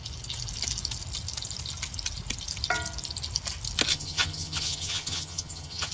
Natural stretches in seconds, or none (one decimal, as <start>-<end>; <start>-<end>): 0.0-3.9